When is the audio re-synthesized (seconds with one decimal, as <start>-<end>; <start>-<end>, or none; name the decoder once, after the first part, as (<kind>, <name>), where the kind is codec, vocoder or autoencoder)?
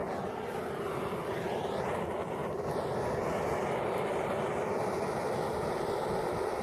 none